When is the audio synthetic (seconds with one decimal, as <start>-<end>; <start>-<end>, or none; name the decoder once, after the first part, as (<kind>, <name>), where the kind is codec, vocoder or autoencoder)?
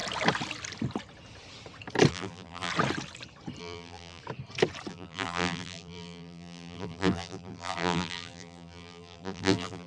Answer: 2.1-2.7 (vocoder, BigVGAN v2); 3.6-4.2; 4.9-9.9